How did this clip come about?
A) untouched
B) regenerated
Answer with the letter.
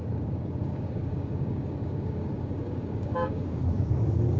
B